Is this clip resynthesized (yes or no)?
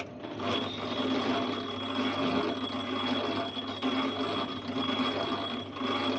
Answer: no